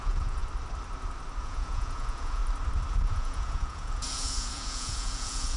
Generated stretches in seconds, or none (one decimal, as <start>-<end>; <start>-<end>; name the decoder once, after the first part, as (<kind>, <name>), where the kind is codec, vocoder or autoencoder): 0.0-0.4 (vocoder, Vocos); 1.4-2.4; 2.9-5.6